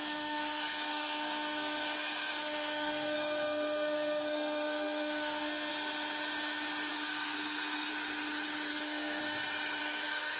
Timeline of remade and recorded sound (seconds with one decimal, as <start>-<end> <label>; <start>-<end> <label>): 0.0-5.7 remade; 5.7-6.9 recorded; 6.9-7.9 remade; 7.9-8.7 recorded; 8.7-9.2 remade; 9.2-9.8 recorded; 9.8-10.4 remade